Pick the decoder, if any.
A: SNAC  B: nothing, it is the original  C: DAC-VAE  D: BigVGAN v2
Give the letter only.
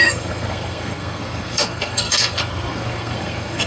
A